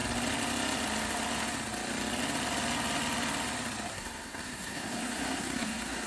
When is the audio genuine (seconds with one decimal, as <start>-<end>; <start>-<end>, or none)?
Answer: 0.0-3.9